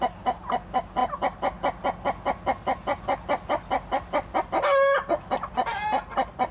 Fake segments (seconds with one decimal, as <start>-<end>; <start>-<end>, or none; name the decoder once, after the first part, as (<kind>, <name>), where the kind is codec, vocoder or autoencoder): none